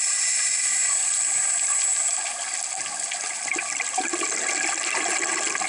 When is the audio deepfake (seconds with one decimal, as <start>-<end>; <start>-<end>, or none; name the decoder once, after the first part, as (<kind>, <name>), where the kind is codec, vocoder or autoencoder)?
none

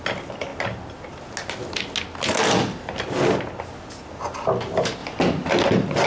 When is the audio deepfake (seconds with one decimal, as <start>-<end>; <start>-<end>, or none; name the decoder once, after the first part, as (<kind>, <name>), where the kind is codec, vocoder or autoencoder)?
none

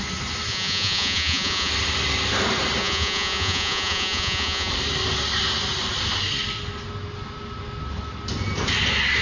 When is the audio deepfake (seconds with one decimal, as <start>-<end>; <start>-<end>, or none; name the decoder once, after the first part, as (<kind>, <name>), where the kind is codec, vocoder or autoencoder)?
0.5-1.7 (vocoder, Vocos); 2.8-4.7

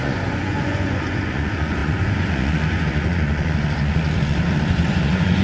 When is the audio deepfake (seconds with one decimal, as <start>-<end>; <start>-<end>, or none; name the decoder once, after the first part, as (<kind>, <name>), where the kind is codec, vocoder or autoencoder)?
0.0-5.4 (vocoder, Vocos)

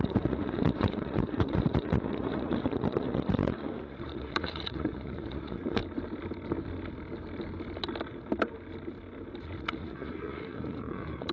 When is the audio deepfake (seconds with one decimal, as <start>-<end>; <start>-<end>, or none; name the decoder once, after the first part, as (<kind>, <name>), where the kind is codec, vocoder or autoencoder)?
0.0-5.8 (vocoder, Vocos); 9.4-11.3

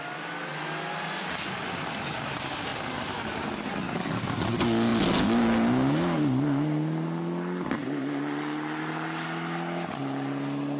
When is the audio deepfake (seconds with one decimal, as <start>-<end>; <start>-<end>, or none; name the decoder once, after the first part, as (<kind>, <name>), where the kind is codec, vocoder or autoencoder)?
none

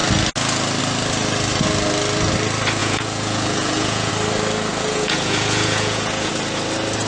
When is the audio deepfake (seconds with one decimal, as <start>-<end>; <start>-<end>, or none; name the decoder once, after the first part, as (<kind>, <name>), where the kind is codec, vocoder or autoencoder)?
2.8-4.1 (vocoder, Vocos); 4.7-6.3